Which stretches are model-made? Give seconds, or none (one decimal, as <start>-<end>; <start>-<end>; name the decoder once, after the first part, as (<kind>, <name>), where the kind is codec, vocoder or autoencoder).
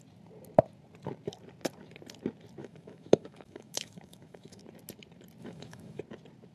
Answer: 2.6-4.6 (autoencoder, DAC-VAE); 5.4-6.0